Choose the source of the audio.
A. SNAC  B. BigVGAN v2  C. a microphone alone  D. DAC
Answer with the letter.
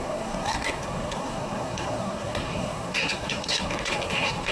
A